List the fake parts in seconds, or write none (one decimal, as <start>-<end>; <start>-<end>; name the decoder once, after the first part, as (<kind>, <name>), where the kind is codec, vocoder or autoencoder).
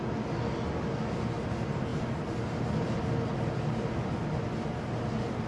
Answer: none